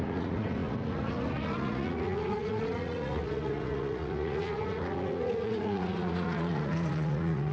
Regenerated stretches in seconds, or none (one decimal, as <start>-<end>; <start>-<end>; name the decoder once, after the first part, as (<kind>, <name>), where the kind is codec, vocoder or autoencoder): 0.0-7.5 (vocoder, Vocos)